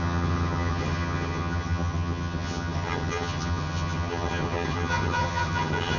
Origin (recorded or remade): remade